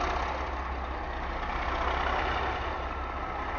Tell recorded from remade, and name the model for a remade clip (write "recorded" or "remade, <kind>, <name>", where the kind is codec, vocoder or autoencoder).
recorded